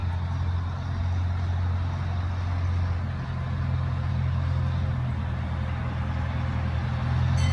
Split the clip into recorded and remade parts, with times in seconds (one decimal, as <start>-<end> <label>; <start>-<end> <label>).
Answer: 0.0-7.5 recorded